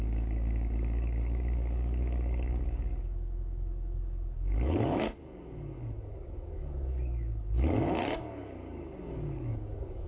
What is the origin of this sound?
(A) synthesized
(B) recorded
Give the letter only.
A